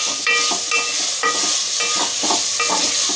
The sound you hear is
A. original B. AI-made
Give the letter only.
A